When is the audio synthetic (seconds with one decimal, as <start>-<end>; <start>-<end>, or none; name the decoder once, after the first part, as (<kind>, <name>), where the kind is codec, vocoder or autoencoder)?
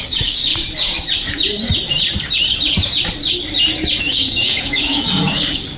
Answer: 0.0-0.5 (codec, DAC); 4.0-5.8